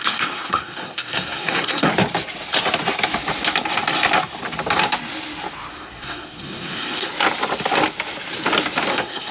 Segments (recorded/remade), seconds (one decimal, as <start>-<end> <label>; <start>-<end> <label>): 0.0-1.9 remade; 1.9-5.7 recorded; 5.7-7.1 remade; 7.1-8.9 recorded; 8.9-9.3 remade